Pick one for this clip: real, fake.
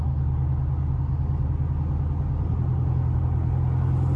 real